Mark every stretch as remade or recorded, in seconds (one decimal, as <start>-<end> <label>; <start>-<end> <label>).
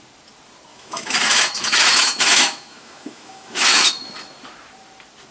0.0-0.7 recorded; 0.7-3.9 remade; 3.9-5.3 recorded